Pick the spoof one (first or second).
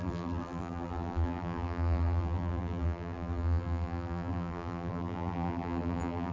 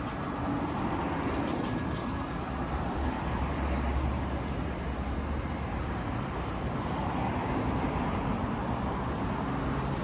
first